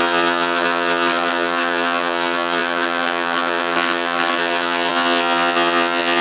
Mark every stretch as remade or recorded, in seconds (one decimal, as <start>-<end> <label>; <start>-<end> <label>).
0.0-6.2 remade